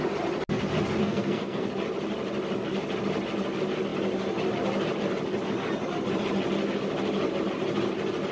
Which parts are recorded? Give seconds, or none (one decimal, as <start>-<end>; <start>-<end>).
0.0-1.0; 1.7-8.3